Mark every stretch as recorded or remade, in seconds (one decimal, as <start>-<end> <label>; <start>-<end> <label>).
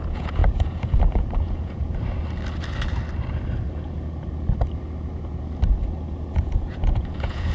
0.0-1.8 remade; 1.8-6.3 recorded; 6.3-7.5 remade